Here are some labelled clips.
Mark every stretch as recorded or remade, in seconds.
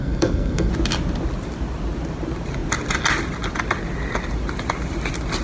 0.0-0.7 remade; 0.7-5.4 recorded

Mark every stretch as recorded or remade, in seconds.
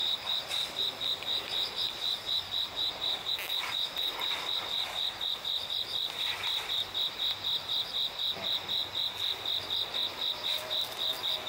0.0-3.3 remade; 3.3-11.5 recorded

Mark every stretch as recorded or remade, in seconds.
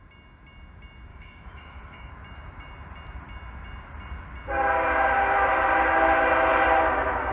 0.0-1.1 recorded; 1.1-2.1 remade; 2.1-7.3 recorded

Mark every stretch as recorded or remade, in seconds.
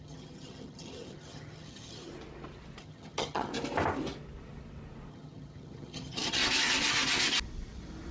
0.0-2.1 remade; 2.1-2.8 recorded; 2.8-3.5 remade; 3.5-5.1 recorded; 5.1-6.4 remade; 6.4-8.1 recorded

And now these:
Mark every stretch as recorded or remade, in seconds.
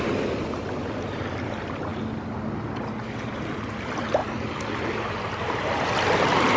0.0-6.6 recorded